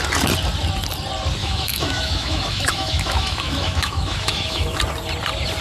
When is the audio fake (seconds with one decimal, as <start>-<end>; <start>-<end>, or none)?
1.4-4.8